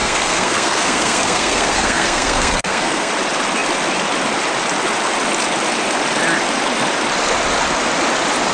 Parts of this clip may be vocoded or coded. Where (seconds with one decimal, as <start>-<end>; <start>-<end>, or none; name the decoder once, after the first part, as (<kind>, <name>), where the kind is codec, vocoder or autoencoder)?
0.0-3.1 (codec, SNAC)

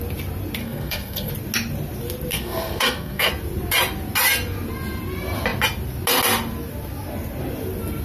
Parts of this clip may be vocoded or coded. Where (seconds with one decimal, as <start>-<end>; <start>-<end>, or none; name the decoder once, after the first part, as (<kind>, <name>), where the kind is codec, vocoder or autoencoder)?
0.6-1.3 (codec, SNAC); 2.3-3.3

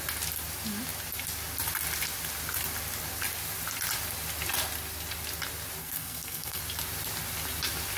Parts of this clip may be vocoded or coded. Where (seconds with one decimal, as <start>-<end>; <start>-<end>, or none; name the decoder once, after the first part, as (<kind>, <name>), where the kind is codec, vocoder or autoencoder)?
5.8-6.6 (codec, SNAC)

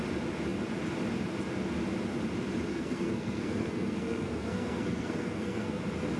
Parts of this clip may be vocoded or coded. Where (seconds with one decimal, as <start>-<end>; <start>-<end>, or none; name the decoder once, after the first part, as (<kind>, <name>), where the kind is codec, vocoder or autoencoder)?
2.7-5.8 (codec, SNAC)

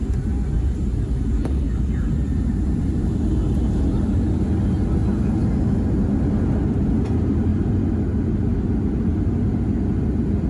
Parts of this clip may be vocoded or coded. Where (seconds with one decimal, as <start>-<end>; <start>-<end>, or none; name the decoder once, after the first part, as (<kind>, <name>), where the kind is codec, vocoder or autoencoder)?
none

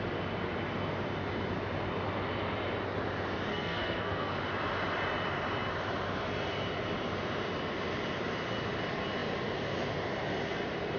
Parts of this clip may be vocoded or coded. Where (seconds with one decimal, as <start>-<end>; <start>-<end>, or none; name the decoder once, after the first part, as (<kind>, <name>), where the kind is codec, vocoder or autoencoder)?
3.5-4.3 (codec, SNAC)